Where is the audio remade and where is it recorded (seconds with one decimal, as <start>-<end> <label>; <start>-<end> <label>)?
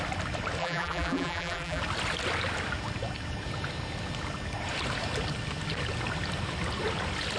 0.0-0.6 recorded; 0.6-1.8 remade; 1.8-7.4 recorded